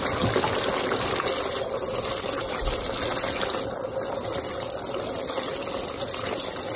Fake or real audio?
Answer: real